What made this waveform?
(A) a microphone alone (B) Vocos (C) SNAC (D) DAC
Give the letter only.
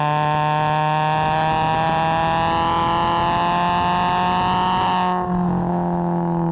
A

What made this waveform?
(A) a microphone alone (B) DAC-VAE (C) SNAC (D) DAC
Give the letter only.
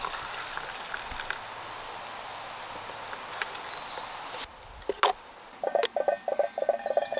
A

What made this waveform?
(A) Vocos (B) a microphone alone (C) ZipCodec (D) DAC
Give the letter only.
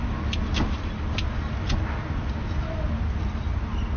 B